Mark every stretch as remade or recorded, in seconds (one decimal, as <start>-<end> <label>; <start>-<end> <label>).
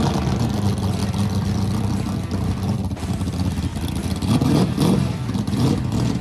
0.0-6.2 remade